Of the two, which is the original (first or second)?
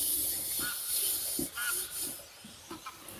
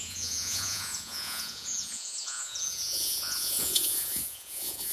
first